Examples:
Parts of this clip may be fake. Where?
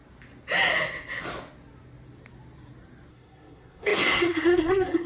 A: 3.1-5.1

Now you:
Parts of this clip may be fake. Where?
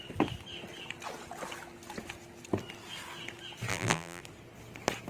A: 3.7-4.2